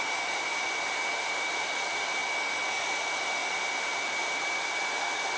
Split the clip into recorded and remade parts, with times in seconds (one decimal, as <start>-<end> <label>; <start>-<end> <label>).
0.0-2.2 remade; 2.2-2.8 recorded; 2.8-5.4 remade